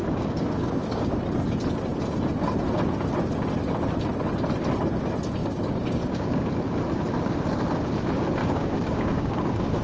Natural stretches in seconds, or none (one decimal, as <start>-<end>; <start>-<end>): 1.2-5.4; 6.4-8.4

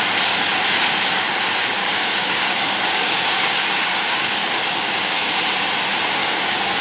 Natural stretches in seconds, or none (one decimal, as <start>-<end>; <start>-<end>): 0.0-1.8; 5.3-6.2